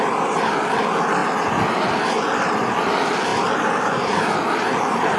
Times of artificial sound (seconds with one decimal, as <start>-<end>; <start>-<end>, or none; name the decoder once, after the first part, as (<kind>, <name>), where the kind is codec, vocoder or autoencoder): none